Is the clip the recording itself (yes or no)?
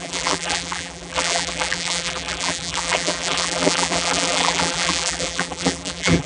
no